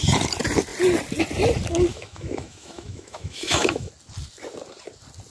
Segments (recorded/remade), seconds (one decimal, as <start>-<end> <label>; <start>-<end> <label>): 0.0-1.9 recorded; 1.9-3.9 remade; 3.9-5.3 recorded

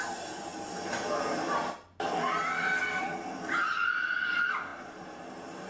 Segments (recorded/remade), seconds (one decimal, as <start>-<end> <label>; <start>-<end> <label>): 0.0-5.7 recorded

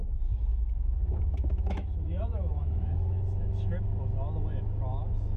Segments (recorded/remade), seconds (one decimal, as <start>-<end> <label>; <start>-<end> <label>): 0.0-0.5 recorded; 0.5-3.7 remade; 3.7-5.4 recorded